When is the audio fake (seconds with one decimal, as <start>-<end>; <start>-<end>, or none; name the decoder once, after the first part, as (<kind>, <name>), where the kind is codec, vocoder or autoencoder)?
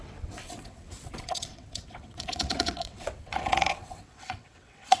0.0-5.0 (vocoder, WaveNeXt)